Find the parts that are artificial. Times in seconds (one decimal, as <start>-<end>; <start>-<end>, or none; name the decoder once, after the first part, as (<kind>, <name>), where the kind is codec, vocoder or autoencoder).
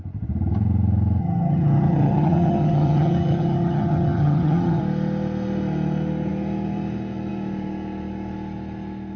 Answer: 1.2-4.8 (vocoder, HiFi-GAN)